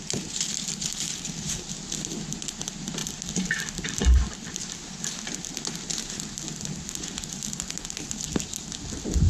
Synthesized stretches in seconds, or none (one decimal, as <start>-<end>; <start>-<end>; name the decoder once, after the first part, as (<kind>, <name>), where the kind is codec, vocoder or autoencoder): 3.0-5.4 (vocoder, BigVGAN v2)